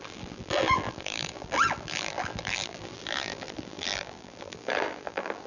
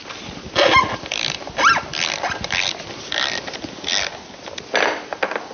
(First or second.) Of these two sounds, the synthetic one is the first